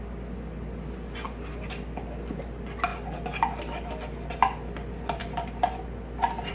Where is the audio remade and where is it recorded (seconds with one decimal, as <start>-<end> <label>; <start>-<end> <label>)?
0.0-6.5 recorded